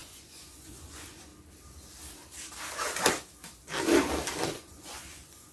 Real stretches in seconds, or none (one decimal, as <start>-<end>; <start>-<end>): 1.3-4.5